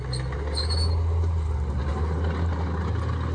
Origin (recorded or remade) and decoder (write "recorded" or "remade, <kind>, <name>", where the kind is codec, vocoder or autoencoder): recorded